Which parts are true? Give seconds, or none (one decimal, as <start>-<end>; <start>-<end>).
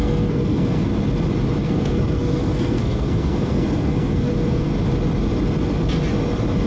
0.9-1.6; 4.7-6.7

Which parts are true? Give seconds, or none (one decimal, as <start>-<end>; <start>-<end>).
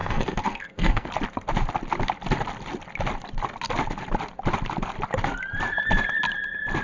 1.1-6.8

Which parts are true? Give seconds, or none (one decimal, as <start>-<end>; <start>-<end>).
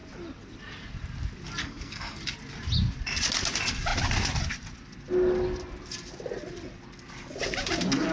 0.0-1.6; 2.2-8.1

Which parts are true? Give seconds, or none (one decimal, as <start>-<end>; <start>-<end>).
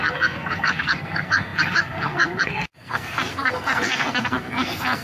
none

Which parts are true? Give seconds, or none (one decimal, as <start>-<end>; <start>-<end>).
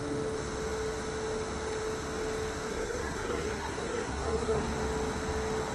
0.0-2.7; 4.6-5.7